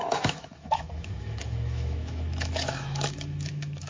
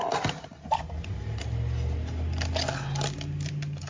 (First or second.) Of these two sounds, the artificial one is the first